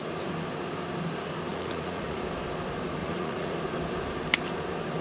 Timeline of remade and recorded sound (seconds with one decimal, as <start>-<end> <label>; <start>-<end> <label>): 0.0-1.5 recorded; 1.5-2.2 remade; 2.2-3.0 recorded; 3.0-3.6 remade; 3.6-5.0 recorded